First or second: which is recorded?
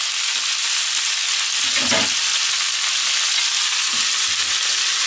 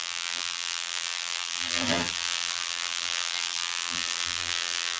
first